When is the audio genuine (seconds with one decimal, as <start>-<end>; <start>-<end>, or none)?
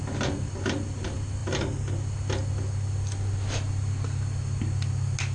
0.0-5.3